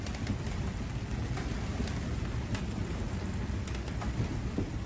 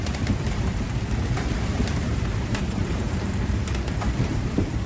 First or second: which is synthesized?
second